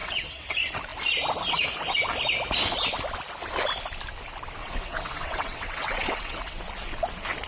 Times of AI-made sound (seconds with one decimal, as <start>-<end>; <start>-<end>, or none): 0.0-0.5; 4.6-6.6